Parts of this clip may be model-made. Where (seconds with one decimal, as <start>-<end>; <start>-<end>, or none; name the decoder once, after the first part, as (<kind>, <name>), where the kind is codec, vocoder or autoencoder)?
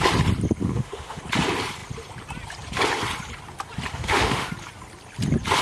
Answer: 0.6-1.2 (autoencoder, DAC-VAE); 3.9-4.5